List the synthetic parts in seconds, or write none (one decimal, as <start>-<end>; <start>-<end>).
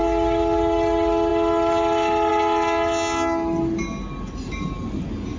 none